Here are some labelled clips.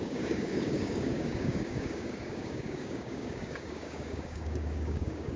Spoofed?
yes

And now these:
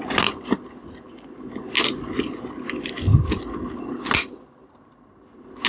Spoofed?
no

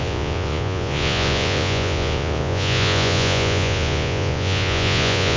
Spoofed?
yes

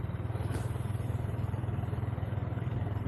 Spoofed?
no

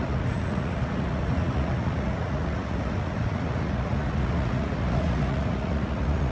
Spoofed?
yes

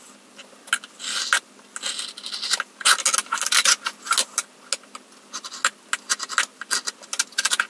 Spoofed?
no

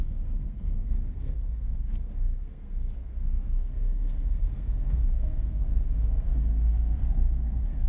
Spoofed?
yes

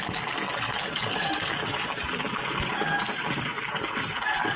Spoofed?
no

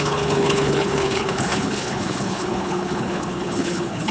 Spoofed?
yes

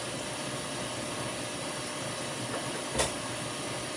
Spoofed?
no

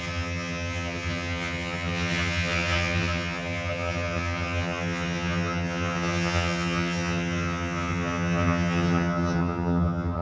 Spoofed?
yes